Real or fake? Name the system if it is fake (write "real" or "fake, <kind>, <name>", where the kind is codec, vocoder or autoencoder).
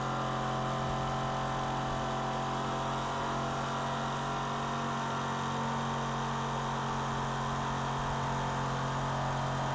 real